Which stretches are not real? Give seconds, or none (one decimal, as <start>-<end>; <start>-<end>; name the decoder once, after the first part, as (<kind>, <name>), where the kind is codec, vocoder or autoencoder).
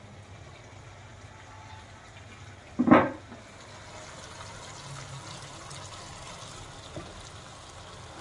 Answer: none